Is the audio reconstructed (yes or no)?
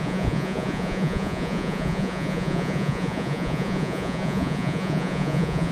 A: yes